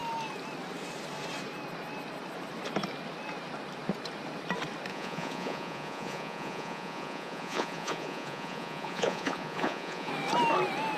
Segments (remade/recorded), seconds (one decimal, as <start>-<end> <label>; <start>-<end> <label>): 0.0-4.9 recorded; 4.9-10.1 remade; 10.1-11.0 recorded

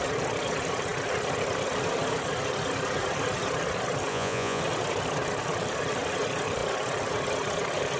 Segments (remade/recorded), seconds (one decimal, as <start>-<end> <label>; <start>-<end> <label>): 0.0-4.1 recorded; 4.1-4.6 remade; 4.6-8.0 recorded